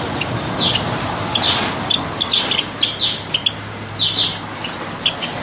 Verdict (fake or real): real